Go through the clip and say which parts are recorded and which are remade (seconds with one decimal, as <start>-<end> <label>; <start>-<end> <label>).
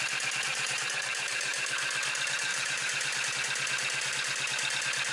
0.0-0.5 recorded; 0.5-1.7 remade; 1.7-2.5 recorded; 2.5-3.3 remade; 3.3-5.1 recorded